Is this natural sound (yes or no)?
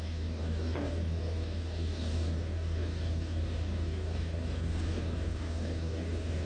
no